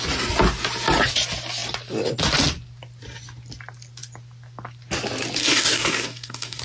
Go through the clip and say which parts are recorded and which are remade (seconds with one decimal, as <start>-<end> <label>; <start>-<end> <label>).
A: 0.0-5.4 recorded; 5.4-6.6 remade

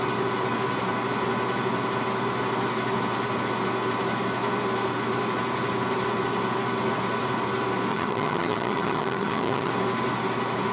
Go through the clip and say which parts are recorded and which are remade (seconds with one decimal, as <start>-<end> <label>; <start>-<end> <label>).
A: 0.0-7.9 recorded; 7.9-9.7 remade; 9.7-10.7 recorded

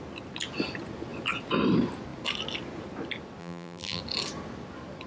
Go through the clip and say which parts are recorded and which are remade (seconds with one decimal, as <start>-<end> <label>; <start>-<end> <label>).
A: 0.0-3.4 recorded; 3.4-4.0 remade; 4.0-5.1 recorded

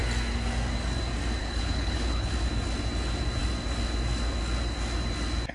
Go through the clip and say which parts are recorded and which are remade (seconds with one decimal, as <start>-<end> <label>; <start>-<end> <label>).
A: 0.0-1.4 recorded; 1.4-2.3 remade; 2.3-5.5 recorded

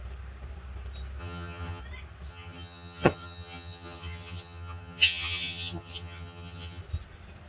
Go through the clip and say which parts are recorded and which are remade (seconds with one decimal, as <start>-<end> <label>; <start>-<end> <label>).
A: 0.0-1.2 recorded; 1.2-1.8 remade; 1.8-2.3 recorded; 2.3-6.8 remade; 6.8-7.5 recorded

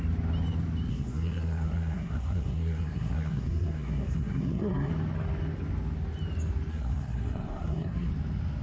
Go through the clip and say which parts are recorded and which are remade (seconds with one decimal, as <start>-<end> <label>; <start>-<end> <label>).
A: 0.0-0.9 recorded; 0.9-4.9 remade; 4.9-6.7 recorded; 6.7-8.1 remade; 8.1-8.6 recorded

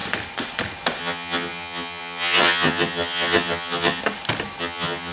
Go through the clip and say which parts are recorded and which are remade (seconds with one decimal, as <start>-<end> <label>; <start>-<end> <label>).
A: 0.0-1.0 recorded; 1.0-4.0 remade; 4.0-4.6 recorded; 4.6-5.1 remade